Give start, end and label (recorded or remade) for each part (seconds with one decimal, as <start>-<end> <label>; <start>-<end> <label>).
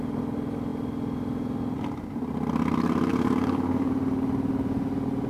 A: 0.0-3.1 recorded; 3.1-3.9 remade; 3.9-5.3 recorded